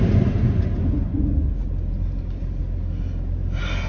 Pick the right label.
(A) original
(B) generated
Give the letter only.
A